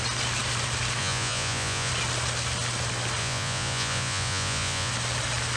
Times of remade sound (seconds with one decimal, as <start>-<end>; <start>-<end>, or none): 1.0-1.9; 3.2-4.9